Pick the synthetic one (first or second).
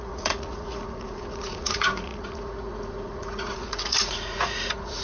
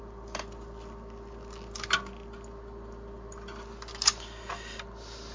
first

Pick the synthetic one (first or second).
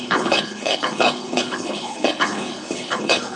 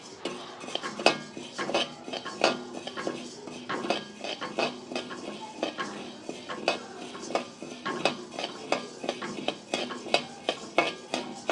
first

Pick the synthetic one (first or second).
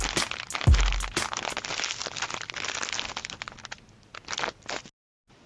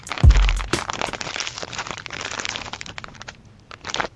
second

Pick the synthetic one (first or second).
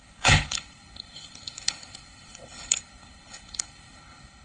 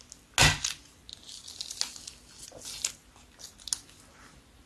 first